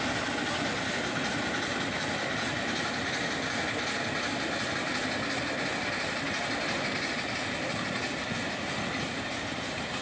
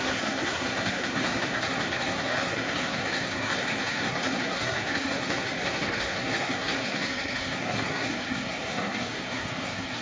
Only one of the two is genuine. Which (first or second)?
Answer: first